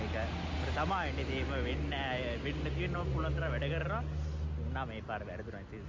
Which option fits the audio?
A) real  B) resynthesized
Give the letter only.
A